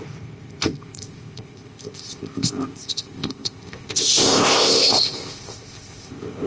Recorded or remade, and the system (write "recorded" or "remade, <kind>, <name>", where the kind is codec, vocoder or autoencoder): remade, codec, ZipCodec